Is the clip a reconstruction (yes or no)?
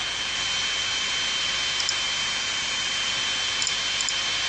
no